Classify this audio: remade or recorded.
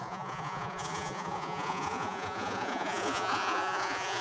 remade